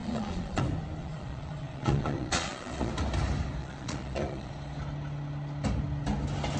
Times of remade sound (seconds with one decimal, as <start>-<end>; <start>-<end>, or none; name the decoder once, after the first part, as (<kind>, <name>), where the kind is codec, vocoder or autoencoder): 0.0-0.6 (vocoder, Vocos); 1.0-2.9; 3.6-4.5